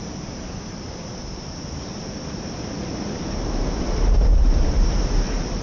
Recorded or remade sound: remade